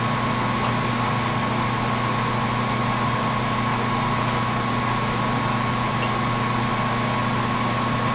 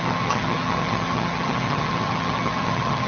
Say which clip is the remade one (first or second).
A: second